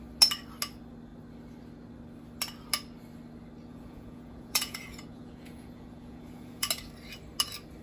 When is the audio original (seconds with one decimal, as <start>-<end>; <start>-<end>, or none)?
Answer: 0.0-3.7; 6.7-7.8

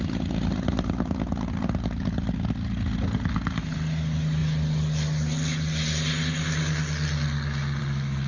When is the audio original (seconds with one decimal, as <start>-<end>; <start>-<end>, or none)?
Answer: 0.0-8.3

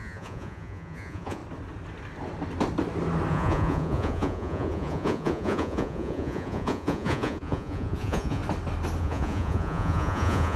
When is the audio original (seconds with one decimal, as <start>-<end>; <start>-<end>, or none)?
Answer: 1.4-3.3; 8.4-9.0

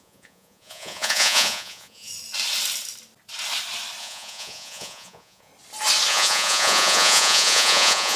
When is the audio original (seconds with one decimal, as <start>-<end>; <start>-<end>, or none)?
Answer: 2.1-4.0; 5.5-6.1

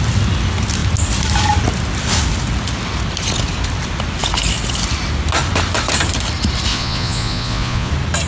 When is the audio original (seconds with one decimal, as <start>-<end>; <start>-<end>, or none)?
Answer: 0.0-6.7; 7.9-8.3